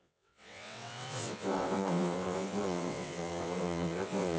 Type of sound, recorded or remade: remade